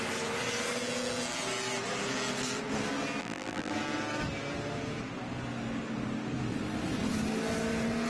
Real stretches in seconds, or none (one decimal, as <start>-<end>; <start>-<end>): 0.0-3.2; 3.7-8.1